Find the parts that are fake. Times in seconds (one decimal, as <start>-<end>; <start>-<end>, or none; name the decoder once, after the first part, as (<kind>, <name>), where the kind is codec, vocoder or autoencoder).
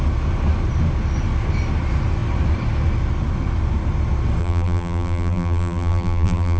4.4-6.6 (vocoder, BigVGAN v2)